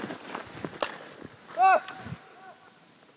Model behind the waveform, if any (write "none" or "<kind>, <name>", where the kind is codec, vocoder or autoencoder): none